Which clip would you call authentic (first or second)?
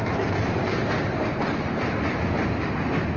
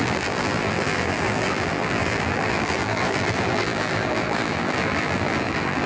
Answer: first